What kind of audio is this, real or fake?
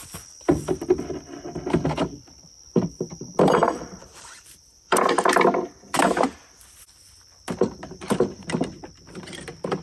fake